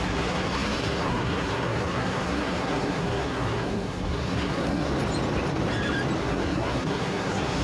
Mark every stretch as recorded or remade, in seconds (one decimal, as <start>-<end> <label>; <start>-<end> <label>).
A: 0.0-4.9 remade; 4.9-6.2 recorded; 6.2-7.6 remade